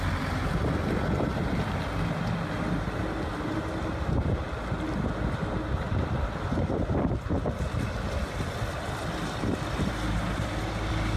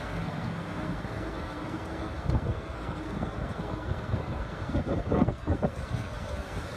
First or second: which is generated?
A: second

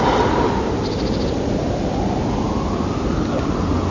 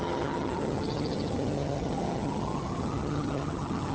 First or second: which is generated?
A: second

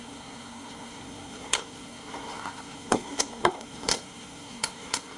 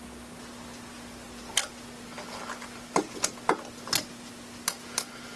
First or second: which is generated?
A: first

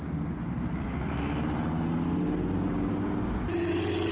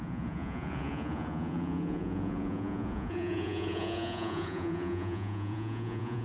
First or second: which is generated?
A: second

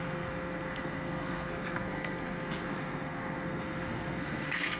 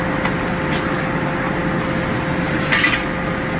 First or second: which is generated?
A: first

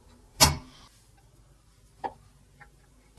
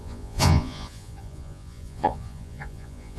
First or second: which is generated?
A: second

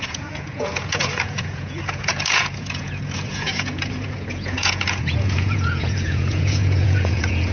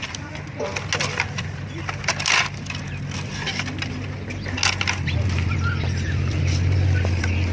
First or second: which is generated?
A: first